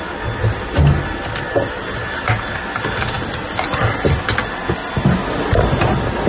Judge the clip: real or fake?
real